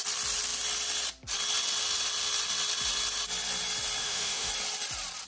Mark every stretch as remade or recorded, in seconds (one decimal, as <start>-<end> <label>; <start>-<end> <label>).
0.0-4.0 recorded; 4.0-4.5 remade; 4.5-5.3 recorded